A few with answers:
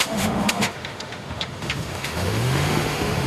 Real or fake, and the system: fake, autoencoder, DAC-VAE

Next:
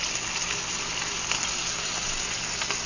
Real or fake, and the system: real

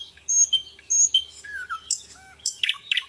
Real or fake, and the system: fake, codec, DAC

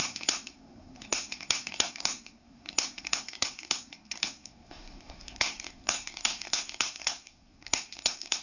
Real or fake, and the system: fake, codec, SNAC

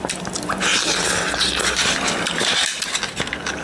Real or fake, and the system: real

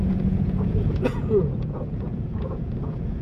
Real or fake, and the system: fake, vocoder, Vocos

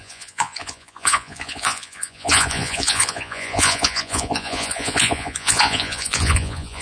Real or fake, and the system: fake, vocoder, Vocos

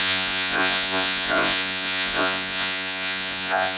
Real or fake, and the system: fake, vocoder, Vocos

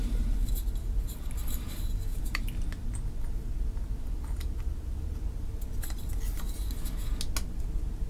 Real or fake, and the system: real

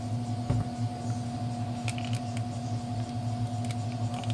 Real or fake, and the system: real